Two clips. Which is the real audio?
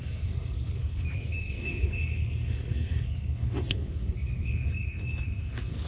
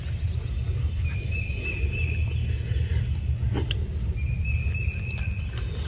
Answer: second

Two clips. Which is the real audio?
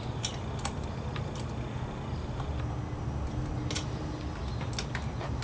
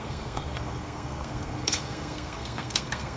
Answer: first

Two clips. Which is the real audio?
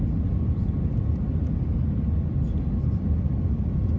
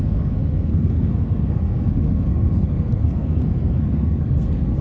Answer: first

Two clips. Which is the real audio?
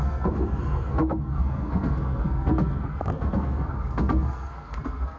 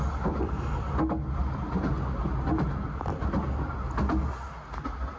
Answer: second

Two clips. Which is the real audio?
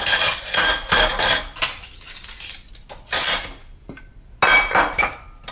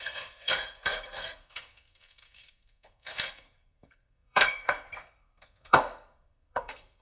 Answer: first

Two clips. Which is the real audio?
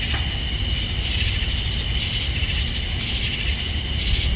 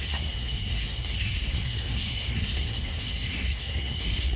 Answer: first